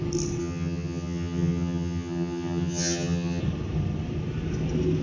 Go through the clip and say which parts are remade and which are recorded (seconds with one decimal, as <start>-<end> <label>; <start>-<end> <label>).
0.0-0.4 recorded; 0.4-3.4 remade; 3.4-5.0 recorded